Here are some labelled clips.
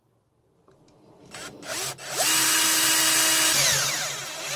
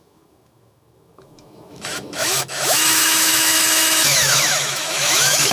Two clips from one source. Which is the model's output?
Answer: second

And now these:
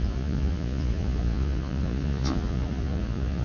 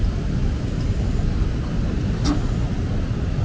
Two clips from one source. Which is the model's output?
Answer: first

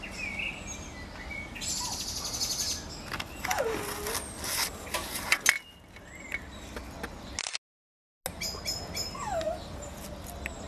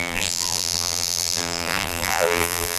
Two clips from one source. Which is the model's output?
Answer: second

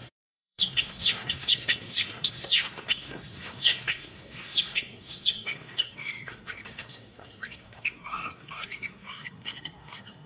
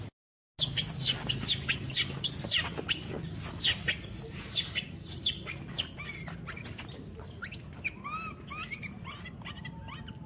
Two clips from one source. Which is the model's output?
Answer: first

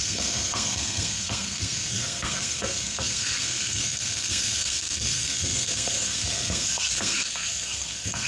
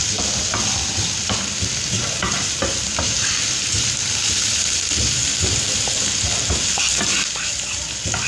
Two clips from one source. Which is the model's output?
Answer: first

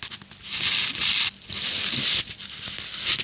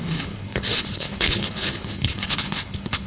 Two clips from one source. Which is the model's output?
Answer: second